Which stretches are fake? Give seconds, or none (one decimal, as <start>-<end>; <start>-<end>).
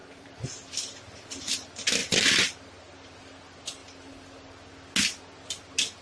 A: 0.0-0.5